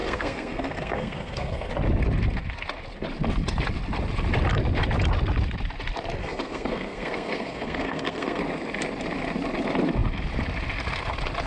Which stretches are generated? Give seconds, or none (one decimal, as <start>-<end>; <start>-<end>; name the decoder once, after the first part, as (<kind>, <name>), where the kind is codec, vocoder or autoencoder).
0.0-1.7 (codec, SNAC); 6.2-8.4